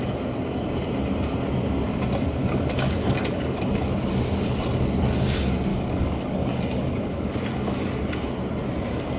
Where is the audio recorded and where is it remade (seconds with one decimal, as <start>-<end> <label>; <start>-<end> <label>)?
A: 0.0-2.4 recorded; 2.4-3.6 remade; 3.6-5.7 recorded; 5.7-8.0 remade; 8.0-9.2 recorded

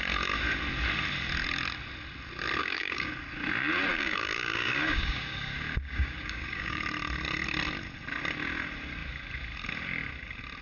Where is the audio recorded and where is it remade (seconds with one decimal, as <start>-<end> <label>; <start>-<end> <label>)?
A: 0.0-2.6 recorded; 2.6-3.1 remade; 3.1-3.9 recorded; 3.9-6.8 remade; 6.8-10.6 recorded

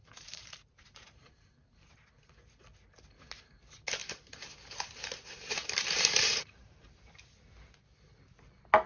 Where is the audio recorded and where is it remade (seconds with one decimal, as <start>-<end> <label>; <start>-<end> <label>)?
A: 0.0-1.9 remade; 1.9-4.0 recorded; 4.0-6.8 remade; 6.8-8.9 recorded

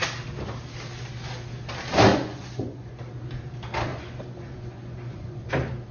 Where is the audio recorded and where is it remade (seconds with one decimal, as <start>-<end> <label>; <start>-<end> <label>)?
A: 0.0-2.1 recorded; 2.1-3.0 remade; 3.0-3.9 recorded; 3.9-5.5 remade; 5.5-5.9 recorded